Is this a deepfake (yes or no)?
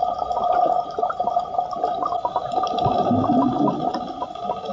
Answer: no